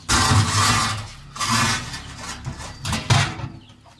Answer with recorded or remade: recorded